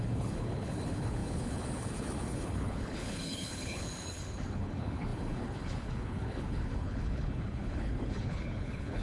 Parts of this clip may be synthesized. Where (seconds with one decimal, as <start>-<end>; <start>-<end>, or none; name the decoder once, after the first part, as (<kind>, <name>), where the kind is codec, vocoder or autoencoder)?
0.0-9.0 (codec, HILCodec)